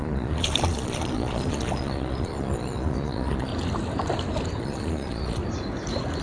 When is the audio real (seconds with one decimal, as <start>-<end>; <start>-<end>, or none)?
3.5-4.6; 5.4-6.2